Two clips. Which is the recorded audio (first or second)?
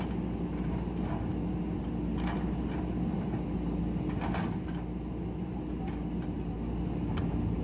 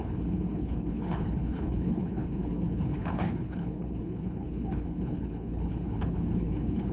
first